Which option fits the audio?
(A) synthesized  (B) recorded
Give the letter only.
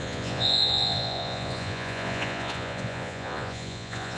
A